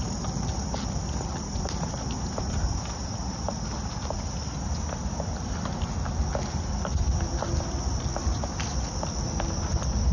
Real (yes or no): yes